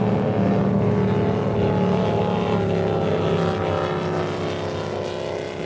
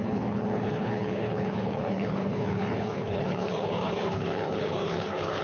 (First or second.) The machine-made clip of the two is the second